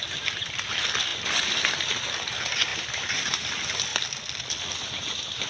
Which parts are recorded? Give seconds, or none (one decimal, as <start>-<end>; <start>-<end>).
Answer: 0.0-5.5